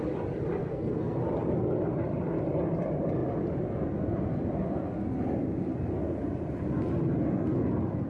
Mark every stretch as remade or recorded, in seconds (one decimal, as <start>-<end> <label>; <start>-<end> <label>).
0.0-0.6 recorded; 0.6-1.2 remade; 1.2-8.1 recorded

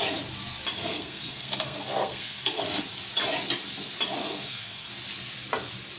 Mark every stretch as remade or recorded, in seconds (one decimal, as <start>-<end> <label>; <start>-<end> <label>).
0.0-0.7 recorded; 0.7-2.8 remade; 2.8-4.2 recorded; 4.2-4.9 remade; 4.9-6.0 recorded

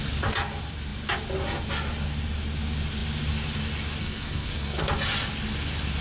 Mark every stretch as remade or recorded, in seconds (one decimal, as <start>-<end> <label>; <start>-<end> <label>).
0.0-4.0 recorded; 4.0-4.9 remade; 4.9-6.0 recorded